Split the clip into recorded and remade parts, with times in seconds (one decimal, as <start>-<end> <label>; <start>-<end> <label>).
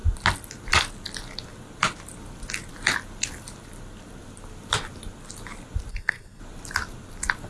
0.0-5.9 recorded; 5.9-6.4 remade; 6.4-7.5 recorded